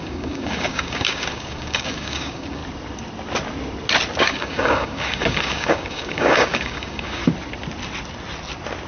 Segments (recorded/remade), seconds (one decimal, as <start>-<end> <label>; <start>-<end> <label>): 0.0-2.6 remade; 2.6-4.2 recorded; 4.2-7.2 remade; 7.2-8.9 recorded